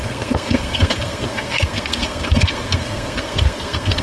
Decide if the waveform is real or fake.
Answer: fake